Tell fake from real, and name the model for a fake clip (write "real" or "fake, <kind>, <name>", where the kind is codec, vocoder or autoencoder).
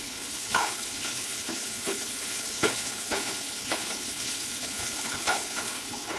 fake, codec, HILCodec